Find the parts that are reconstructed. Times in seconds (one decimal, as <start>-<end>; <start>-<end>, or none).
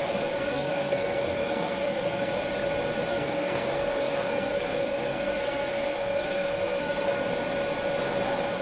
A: 0.0-2.3; 3.1-7.2